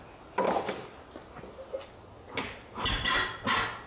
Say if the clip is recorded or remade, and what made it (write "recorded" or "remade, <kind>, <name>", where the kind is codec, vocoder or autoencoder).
recorded